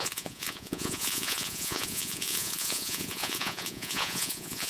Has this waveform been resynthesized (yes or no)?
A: yes